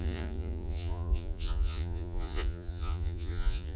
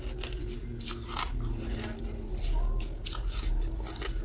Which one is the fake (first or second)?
first